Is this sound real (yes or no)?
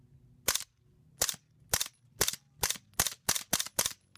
yes